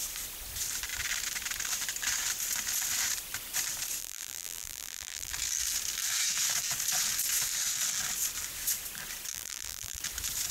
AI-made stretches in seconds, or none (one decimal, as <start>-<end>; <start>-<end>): 4.0-5.3; 9.3-10.0